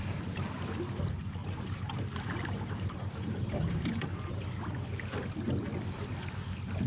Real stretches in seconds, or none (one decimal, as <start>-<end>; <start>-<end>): 0.0-1.4; 4.4-6.9